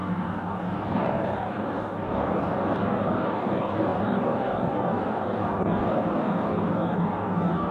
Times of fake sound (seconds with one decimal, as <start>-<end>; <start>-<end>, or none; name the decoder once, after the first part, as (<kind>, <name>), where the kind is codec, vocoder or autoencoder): 0.0-7.7 (codec, DAC)